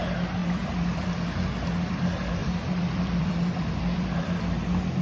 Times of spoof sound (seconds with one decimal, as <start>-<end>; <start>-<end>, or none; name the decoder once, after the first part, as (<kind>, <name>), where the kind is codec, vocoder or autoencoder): 0.4-1.0 (vocoder, BigVGAN v2); 2.4-4.2